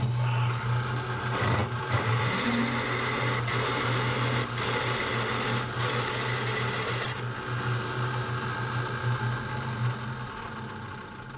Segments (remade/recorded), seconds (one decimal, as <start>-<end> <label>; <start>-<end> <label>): 0.0-1.6 recorded; 1.6-2.1 remade; 2.1-11.4 recorded